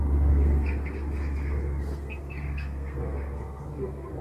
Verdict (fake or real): fake